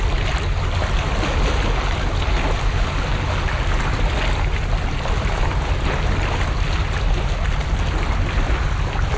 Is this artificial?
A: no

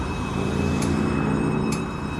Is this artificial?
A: yes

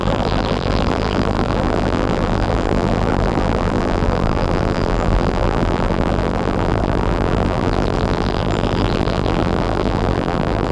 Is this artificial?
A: yes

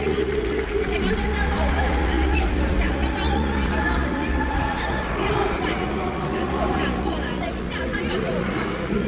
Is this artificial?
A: yes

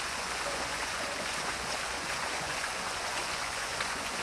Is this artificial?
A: yes